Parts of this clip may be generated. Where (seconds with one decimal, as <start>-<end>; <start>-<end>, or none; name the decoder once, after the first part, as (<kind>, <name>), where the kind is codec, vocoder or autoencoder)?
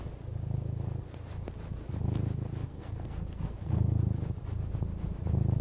2.6-4.2 (codec, SNAC)